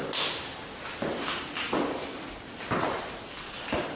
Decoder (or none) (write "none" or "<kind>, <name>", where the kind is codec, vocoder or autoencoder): none